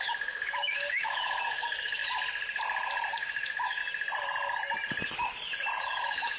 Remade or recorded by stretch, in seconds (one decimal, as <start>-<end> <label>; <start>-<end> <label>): 0.0-2.0 remade; 2.0-3.1 recorded; 3.1-3.8 remade; 3.8-5.8 recorded; 5.8-6.4 remade